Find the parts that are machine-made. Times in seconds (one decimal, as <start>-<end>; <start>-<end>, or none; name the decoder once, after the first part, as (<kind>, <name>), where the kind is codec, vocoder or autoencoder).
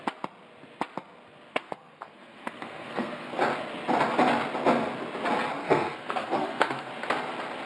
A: 1.5-3.4 (codec, SNAC); 5.6-6.9